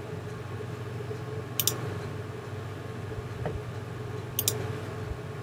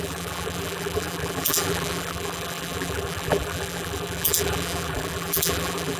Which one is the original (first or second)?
first